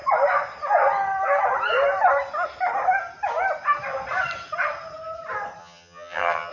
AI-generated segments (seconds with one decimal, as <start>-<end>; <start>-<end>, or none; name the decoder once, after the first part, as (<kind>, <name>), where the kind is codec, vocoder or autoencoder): 5.6-6.5 (vocoder, HiFi-GAN)